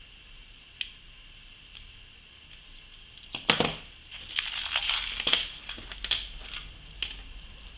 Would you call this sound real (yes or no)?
yes